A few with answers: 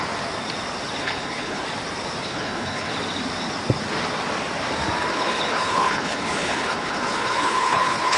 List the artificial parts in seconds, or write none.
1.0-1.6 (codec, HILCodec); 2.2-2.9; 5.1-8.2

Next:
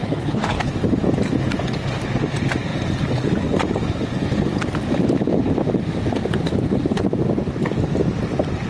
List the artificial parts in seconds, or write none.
0.0-0.7 (codec, HILCodec)

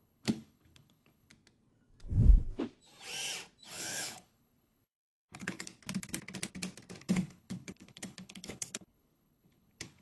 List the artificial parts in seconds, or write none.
0.0-1.3 (codec, HILCodec); 3.7-5.7; 7.0-10.0

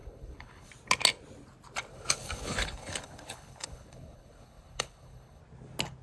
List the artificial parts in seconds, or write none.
0.0-0.7 (codec, HILCodec); 1.9-5.4

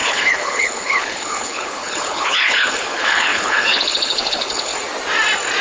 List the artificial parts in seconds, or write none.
0.0-4.7 (codec, HILCodec)

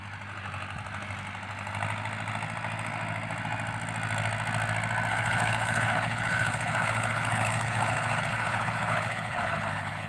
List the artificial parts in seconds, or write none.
5.1-10.1 (codec, HILCodec)

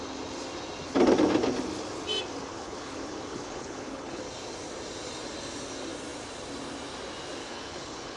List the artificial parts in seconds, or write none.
2.5-4.2 (codec, HILCodec); 7.4-8.2

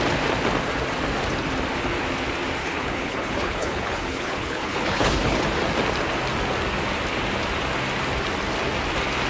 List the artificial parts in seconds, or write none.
2.6-5.4 (codec, HILCodec)